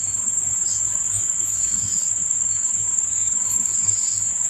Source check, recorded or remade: remade